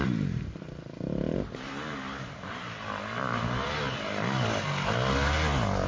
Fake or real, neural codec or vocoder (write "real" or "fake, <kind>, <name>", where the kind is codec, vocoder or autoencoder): real